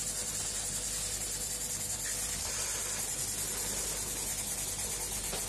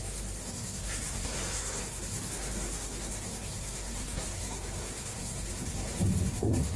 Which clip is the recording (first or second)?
first